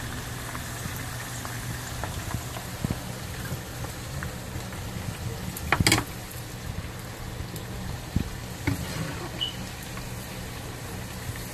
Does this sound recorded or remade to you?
recorded